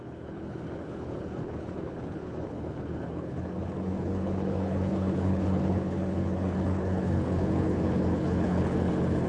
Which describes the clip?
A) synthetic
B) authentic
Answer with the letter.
A